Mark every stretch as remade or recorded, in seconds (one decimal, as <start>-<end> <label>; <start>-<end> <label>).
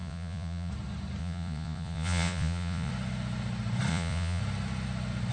0.0-0.7 remade; 0.7-1.2 recorded; 1.2-2.9 remade; 2.9-3.9 recorded; 3.9-4.4 remade; 4.4-5.3 recorded